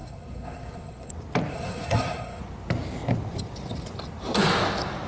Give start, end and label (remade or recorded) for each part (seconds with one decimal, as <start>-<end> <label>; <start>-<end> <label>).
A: 0.0-1.1 remade; 1.1-1.5 recorded; 1.5-2.4 remade; 2.4-5.1 recorded